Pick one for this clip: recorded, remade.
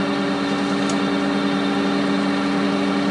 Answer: recorded